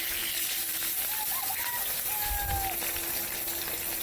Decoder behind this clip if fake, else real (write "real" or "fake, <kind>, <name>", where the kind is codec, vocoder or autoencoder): real